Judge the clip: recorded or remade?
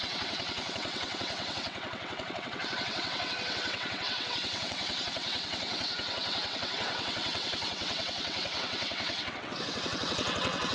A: remade